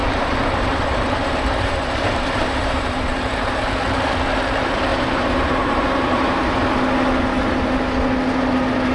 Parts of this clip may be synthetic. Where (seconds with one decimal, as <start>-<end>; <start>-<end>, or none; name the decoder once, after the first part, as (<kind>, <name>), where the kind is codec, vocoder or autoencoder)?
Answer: 0.0-3.5 (vocoder, BigVGAN v2); 4.9-6.5